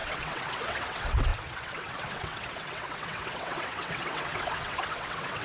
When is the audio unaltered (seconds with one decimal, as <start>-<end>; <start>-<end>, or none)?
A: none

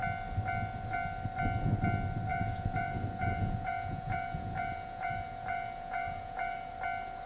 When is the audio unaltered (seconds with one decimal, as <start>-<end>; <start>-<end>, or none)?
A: 0.0-2.3; 6.7-7.3

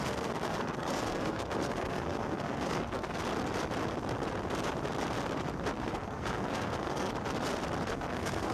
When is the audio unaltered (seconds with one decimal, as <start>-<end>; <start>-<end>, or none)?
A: 3.2-5.7; 7.1-7.9

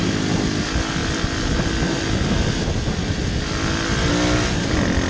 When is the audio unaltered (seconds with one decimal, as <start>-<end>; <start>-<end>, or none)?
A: 0.0-5.1

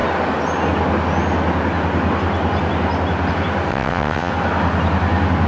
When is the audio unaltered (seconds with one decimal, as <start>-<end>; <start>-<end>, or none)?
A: 0.0-3.7; 4.3-5.5

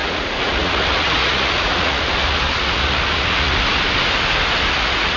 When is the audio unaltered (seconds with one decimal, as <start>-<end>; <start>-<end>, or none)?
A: 3.5-4.7

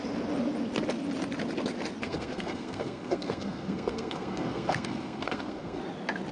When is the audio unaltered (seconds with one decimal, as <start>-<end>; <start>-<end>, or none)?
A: 0.0-2.0; 5.8-6.3